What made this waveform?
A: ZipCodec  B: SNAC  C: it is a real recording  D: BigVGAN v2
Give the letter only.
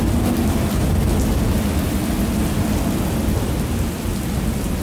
C